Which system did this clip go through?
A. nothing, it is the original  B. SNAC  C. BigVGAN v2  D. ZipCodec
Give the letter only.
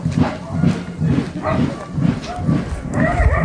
A